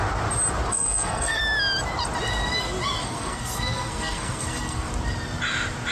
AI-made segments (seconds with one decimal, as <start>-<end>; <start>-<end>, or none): 0.7-1.4; 3.0-4.9